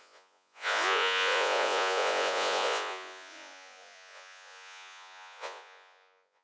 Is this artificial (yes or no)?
yes